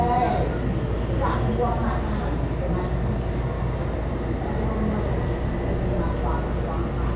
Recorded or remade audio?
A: recorded